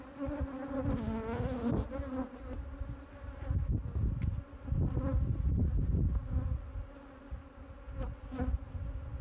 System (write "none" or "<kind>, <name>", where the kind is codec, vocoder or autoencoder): none